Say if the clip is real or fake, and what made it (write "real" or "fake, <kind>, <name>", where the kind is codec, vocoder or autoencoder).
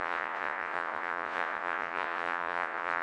fake, vocoder, Vocos